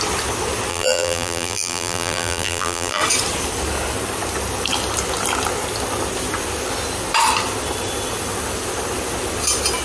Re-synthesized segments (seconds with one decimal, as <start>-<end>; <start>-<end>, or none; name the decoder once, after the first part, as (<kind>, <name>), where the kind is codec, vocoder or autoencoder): 0.7-3.0 (vocoder, BigVGAN v2)